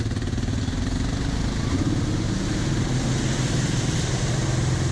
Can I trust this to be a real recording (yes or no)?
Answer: yes